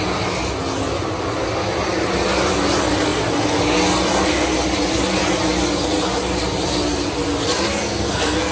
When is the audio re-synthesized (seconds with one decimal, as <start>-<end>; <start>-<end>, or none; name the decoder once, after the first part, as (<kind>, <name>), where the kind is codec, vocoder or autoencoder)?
7.8-8.5 (codec, SNAC)